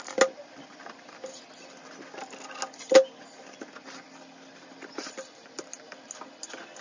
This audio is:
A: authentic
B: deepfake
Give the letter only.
A